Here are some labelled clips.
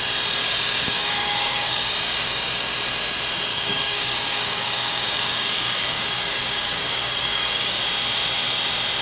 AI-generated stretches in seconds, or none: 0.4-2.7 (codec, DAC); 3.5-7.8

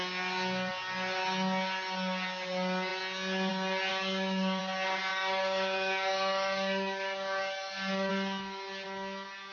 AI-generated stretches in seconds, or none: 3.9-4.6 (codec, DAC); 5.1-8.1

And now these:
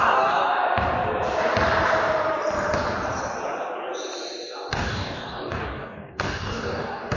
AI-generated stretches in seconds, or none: 0.0-0.4 (codec, DAC); 4.7-7.2

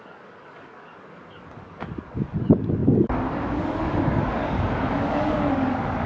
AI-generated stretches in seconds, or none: 0.0-6.1 (codec, DAC)